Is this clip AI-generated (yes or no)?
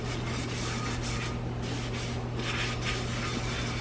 no